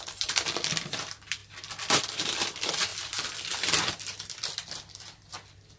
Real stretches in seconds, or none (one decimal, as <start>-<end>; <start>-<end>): 1.4-2.0

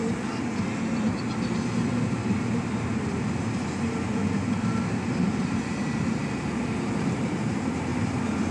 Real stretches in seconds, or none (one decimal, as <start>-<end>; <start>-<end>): 0.0-7.9

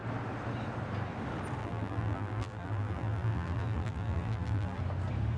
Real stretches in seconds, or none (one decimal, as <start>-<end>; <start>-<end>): 0.0-1.6; 4.8-5.4

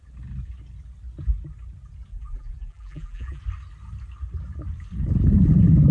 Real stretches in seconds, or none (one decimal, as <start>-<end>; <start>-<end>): 0.0-2.1; 3.4-5.9

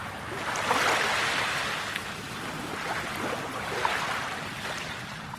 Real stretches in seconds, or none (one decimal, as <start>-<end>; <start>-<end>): 0.0-5.4

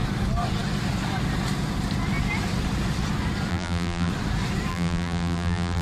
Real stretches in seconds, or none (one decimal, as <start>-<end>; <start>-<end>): 0.0-3.5; 4.1-4.7